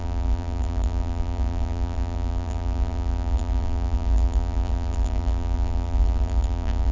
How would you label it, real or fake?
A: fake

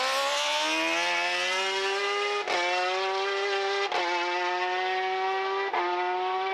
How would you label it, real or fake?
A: real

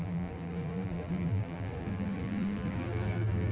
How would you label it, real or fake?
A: fake